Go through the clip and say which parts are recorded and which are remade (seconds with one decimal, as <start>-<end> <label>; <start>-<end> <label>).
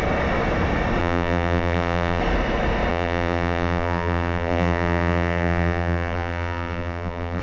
0.0-1.0 recorded; 1.0-2.2 remade; 2.2-2.9 recorded; 2.9-7.4 remade